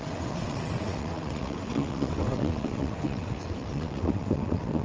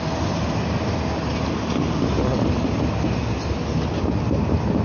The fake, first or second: first